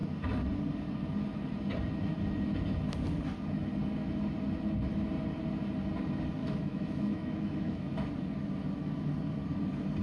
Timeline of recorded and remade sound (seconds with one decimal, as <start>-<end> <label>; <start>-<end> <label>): 0.0-6.4 recorded; 6.4-7.9 remade; 7.9-10.0 recorded